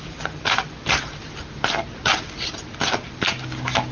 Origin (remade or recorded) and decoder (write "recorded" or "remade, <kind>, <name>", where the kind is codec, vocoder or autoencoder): recorded